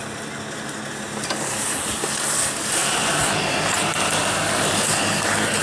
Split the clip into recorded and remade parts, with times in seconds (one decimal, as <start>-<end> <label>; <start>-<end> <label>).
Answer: 0.0-5.6 recorded